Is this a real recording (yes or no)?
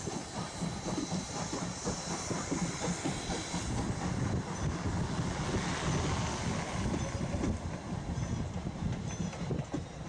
yes